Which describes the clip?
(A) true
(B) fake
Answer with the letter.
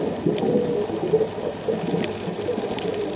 A